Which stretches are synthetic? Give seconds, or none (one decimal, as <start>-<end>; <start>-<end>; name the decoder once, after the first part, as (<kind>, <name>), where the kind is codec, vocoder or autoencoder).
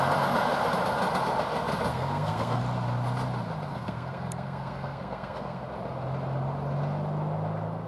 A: 1.9-2.6 (codec, SNAC); 3.7-5.6